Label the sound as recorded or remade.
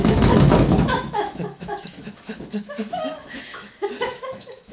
remade